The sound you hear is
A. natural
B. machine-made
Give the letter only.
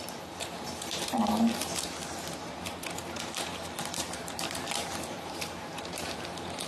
B